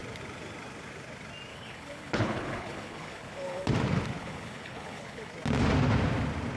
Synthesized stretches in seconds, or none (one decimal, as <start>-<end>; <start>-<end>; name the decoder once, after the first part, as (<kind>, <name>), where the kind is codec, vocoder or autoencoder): 1.5-3.7 (codec, HILCodec); 4.2-5.3